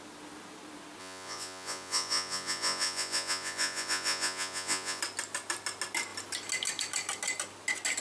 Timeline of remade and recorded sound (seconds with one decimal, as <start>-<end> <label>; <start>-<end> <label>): 0.0-1.0 recorded; 1.0-5.0 remade; 5.0-8.0 recorded